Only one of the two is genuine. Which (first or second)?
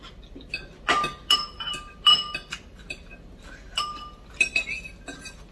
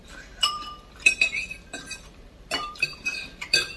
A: first